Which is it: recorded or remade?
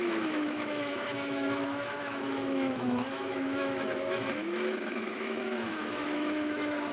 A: remade